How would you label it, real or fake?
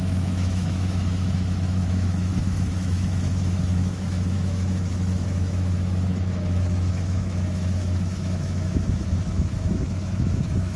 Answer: fake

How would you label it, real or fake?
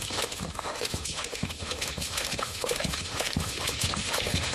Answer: fake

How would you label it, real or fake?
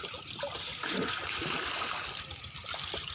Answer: real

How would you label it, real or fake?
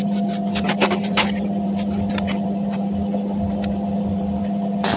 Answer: real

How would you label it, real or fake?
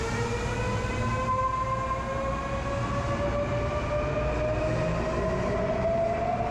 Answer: real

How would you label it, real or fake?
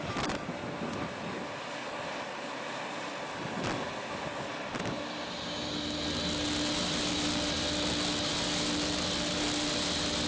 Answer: real